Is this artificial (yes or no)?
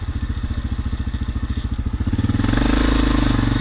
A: no